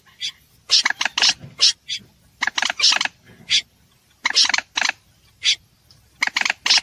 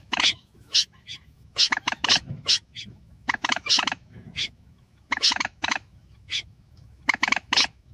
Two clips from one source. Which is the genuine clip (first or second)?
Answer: first